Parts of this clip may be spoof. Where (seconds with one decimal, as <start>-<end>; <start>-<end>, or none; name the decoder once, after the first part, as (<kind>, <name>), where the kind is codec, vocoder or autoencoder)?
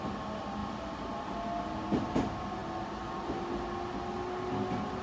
none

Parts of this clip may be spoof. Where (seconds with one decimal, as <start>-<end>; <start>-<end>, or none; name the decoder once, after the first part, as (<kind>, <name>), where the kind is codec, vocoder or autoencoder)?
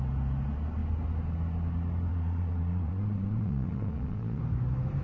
2.1-4.4 (vocoder, Vocos)